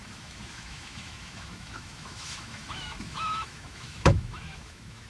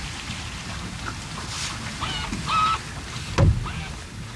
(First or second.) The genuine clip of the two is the second